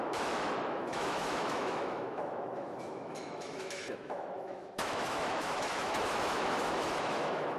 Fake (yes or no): yes